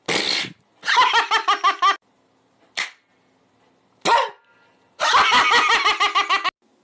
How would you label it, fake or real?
real